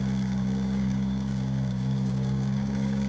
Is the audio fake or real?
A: fake